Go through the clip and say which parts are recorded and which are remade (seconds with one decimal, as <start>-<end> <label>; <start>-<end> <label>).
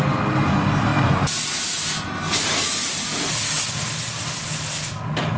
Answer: 0.0-5.4 recorded